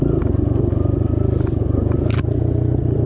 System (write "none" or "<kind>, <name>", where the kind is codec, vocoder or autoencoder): none